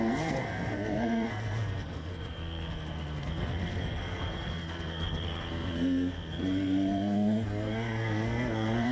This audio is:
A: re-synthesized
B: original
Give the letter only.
A